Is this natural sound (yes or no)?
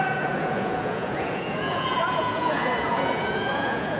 no